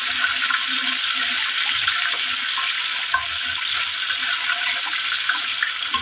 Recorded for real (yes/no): yes